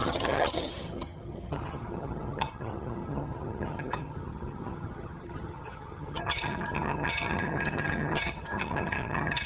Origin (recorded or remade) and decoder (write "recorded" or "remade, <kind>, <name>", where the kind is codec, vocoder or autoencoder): remade, vocoder, HiFi-GAN